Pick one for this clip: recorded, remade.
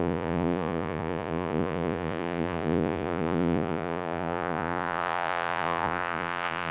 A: remade